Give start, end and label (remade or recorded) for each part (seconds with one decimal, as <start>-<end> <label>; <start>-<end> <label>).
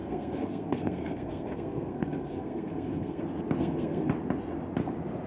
0.0-3.2 remade; 3.2-3.6 recorded; 3.6-4.1 remade; 4.1-5.3 recorded